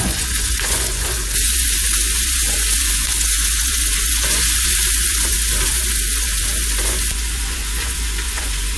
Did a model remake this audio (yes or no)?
yes